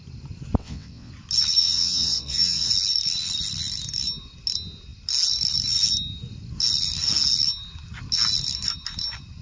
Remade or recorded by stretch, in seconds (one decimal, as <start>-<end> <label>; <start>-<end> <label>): 0.0-0.6 recorded; 0.6-1.1 remade; 1.1-1.6 recorded; 1.6-2.7 remade; 2.7-9.4 recorded